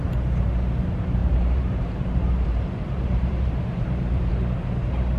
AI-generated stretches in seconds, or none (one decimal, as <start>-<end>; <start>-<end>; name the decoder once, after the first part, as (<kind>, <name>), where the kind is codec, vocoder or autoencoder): 1.2-4.3 (vocoder, BigVGAN v2)